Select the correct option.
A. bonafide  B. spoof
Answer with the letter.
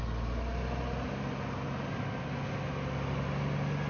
A